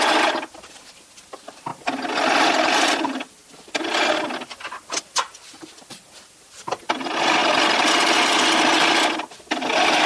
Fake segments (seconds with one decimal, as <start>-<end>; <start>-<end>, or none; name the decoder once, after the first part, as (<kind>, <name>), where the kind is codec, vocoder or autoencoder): 0.0-1.7 (vocoder, BigVGAN v2); 2.4-3.4; 5.9-7.4; 9.3-10.1